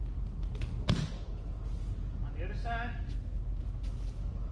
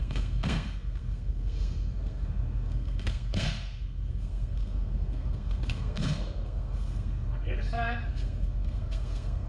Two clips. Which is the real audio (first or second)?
first